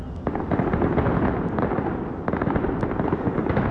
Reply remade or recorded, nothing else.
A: recorded